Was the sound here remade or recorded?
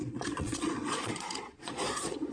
remade